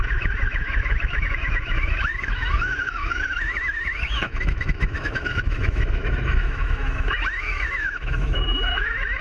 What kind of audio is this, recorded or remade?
remade